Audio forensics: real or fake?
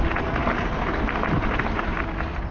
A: real